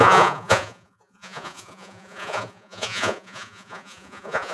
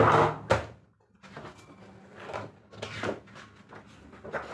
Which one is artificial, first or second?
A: first